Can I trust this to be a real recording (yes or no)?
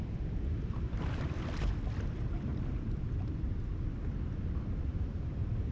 yes